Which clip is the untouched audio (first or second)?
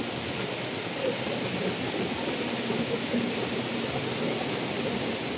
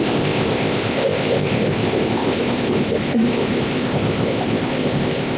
first